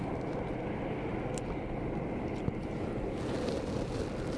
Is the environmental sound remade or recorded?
recorded